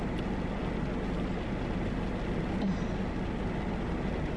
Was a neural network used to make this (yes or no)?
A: no